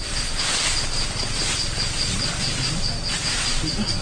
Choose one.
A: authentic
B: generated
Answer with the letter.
A